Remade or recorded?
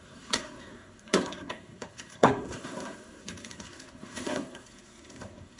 remade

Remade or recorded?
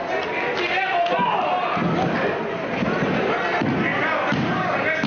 recorded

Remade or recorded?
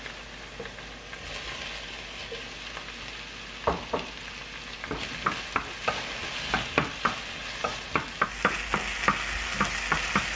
recorded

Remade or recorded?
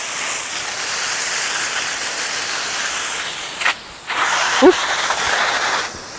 recorded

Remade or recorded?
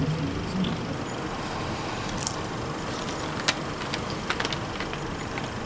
recorded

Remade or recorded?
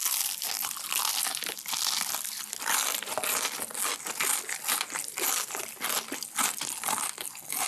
recorded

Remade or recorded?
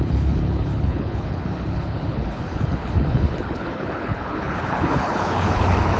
remade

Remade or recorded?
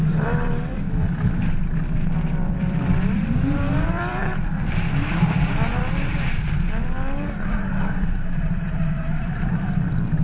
remade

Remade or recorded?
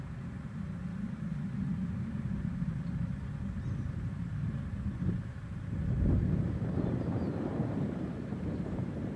remade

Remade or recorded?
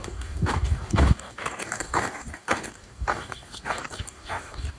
remade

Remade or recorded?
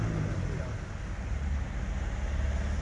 recorded